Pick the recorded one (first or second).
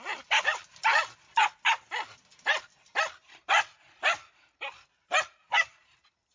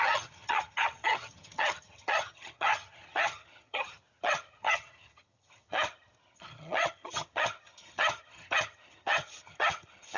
first